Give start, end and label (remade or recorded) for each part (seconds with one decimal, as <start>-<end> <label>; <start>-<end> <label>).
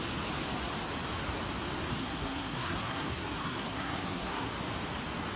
0.0-2.0 recorded; 2.0-4.5 remade; 4.5-5.4 recorded